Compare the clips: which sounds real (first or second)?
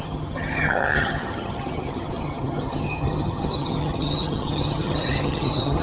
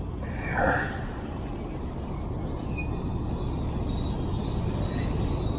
second